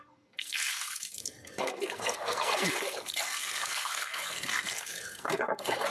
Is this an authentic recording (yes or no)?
no